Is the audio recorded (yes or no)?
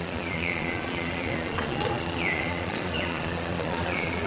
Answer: no